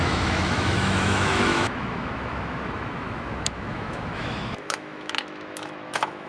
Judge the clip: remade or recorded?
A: remade